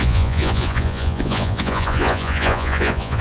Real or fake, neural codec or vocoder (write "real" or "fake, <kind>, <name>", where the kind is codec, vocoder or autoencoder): fake, vocoder, Vocos